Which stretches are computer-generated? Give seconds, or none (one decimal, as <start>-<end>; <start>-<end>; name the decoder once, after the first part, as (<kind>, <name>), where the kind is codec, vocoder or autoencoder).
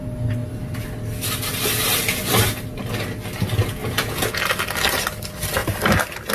3.8-4.4 (vocoder, Vocos)